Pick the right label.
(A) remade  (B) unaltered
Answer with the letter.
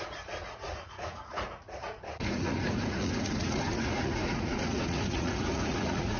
A